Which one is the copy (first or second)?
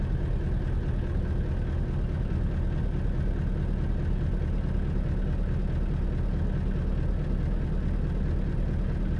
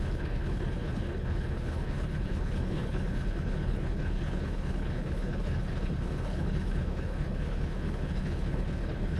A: second